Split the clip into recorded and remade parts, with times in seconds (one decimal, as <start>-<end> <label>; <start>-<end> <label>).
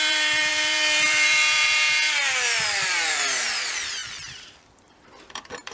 0.0-4.0 remade; 4.0-4.7 recorded; 4.7-5.7 remade